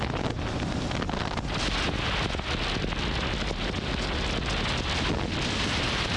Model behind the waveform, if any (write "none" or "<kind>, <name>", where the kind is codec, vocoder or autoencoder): none